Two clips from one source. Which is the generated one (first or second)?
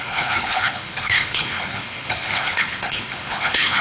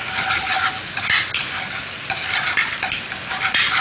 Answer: first